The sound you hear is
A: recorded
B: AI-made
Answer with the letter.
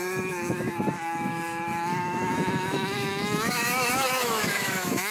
B